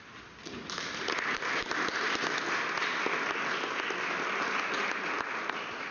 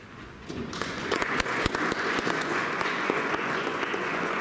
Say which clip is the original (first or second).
first